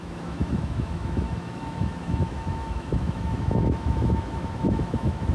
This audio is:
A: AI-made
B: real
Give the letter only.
A